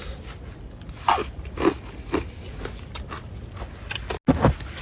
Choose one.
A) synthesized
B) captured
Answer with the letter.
B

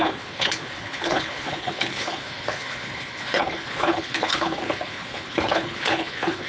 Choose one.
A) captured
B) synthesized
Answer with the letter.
B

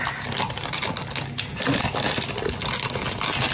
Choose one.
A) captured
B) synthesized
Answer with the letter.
A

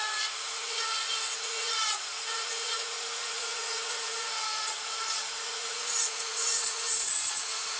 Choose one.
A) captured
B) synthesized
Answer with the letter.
B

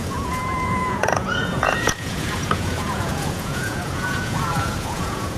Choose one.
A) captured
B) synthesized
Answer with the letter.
B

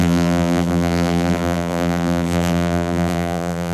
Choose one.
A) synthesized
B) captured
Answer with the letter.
A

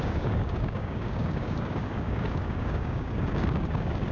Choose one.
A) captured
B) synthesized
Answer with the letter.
B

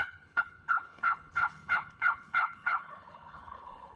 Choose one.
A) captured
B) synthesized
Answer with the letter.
B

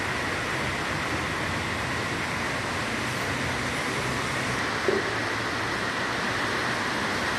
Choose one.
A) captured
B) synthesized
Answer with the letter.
A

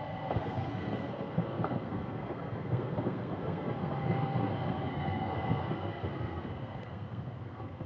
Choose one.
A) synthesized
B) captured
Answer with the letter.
A